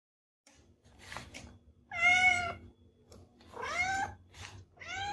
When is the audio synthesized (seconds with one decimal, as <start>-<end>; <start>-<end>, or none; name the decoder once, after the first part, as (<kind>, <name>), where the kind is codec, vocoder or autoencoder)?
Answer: 0.0-5.1 (vocoder, BigVGAN v2)